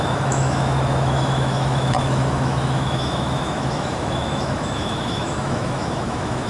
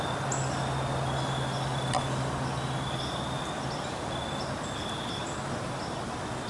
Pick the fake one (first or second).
first